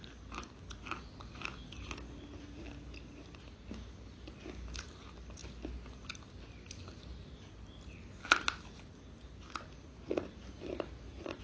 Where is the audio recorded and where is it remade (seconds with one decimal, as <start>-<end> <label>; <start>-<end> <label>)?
0.0-11.4 recorded